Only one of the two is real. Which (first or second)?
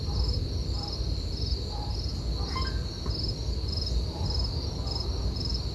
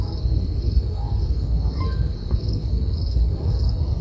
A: first